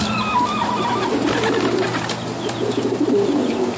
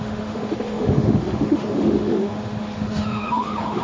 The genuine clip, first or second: first